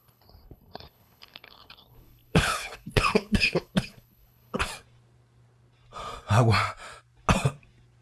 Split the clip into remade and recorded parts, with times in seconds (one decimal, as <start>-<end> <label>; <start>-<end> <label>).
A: 0.0-4.7 remade; 4.7-8.0 recorded